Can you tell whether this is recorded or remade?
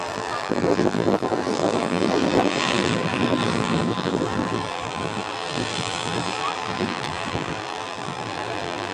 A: remade